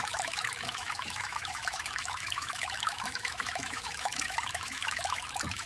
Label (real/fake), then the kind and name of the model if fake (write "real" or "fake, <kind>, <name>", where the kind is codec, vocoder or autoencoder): fake, autoencoder, DAC-VAE